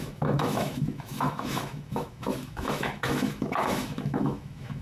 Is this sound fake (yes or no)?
yes